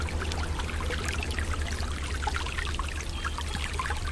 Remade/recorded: recorded